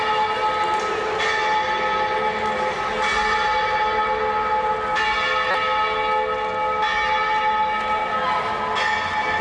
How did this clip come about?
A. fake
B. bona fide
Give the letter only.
B